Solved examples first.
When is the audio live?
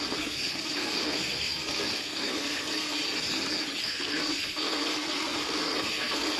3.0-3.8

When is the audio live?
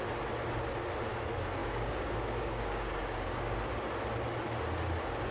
0.0-1.6; 3.7-5.3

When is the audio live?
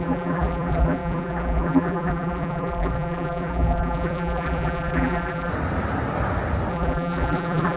5.5-6.7